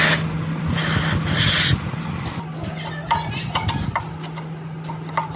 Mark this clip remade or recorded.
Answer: recorded